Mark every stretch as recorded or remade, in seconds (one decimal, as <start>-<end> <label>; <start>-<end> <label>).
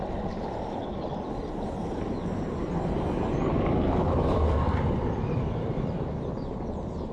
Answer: 0.0-7.1 recorded